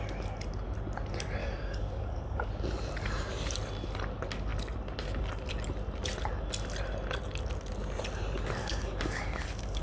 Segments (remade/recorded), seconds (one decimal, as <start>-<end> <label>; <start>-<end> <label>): 0.0-1.4 recorded; 1.4-2.5 remade; 2.5-8.6 recorded; 8.6-9.8 remade